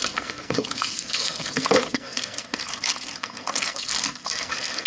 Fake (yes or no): yes